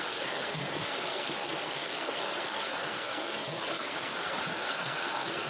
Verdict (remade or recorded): remade